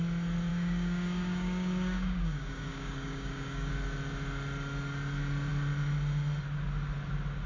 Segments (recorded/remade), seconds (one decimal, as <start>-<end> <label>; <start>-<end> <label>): 0.0-0.5 recorded; 0.5-3.7 remade; 3.7-7.5 recorded